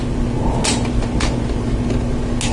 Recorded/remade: recorded